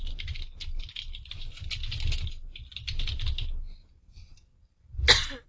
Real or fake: real